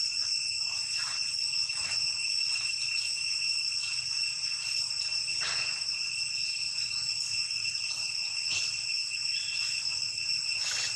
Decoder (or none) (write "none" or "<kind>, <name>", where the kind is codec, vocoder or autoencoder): none